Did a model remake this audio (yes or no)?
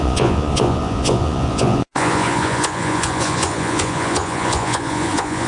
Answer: yes